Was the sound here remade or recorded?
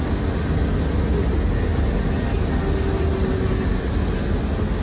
recorded